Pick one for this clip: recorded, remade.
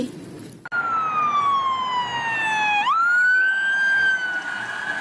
recorded